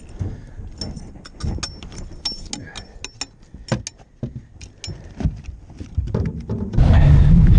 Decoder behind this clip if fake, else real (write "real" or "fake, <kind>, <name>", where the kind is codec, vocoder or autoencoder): real